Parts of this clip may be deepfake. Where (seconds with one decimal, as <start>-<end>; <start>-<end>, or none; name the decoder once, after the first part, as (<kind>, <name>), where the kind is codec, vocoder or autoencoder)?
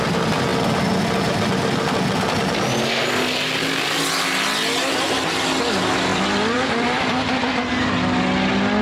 6.1-7.3 (vocoder, BigVGAN v2)